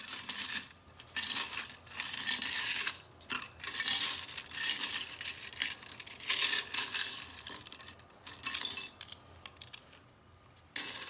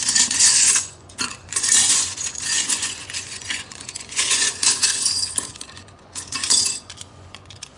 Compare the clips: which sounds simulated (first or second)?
second